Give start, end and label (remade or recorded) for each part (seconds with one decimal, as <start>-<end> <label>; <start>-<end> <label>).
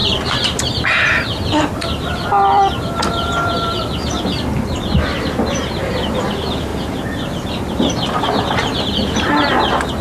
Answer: 0.0-4.6 remade; 4.6-5.6 recorded; 5.6-6.3 remade; 6.3-6.7 recorded; 6.7-8.4 remade; 8.4-10.0 recorded